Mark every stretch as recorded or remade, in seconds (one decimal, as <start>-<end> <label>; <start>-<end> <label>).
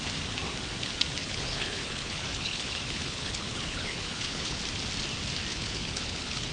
0.0-1.2 recorded; 1.2-4.6 remade; 4.6-5.5 recorded; 5.5-6.5 remade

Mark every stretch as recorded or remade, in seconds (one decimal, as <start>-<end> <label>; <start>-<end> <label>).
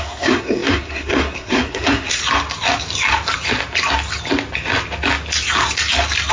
0.0-2.2 remade; 2.2-6.3 recorded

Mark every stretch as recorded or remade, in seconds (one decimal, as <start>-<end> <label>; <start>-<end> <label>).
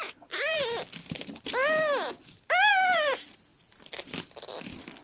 0.0-1.0 remade; 1.0-2.7 recorded; 2.7-3.5 remade; 3.5-4.1 recorded; 4.1-5.0 remade